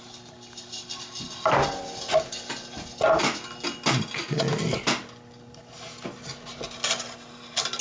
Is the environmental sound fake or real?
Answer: real